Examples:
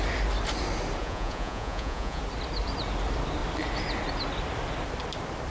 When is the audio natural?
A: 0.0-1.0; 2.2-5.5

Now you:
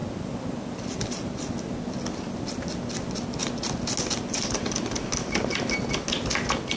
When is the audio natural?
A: 0.0-6.8

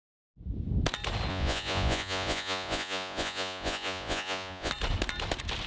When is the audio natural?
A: 0.0-1.3; 4.7-5.7